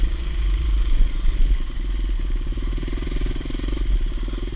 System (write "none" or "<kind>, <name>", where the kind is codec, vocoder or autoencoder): vocoder, BigVGAN v2